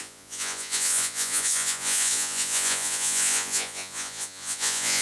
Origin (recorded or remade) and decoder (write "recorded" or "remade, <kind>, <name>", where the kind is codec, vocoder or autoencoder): remade, vocoder, Vocos